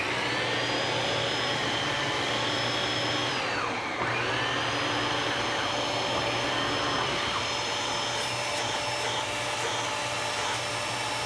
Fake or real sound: real